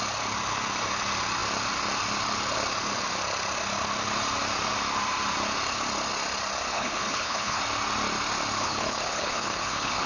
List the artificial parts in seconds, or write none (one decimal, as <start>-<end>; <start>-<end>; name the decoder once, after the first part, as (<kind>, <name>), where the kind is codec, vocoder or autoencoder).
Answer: 6.7-7.6 (codec, HILCodec); 8.6-10.1